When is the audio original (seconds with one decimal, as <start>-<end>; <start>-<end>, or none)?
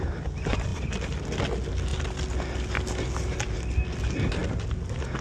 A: 0.0-5.2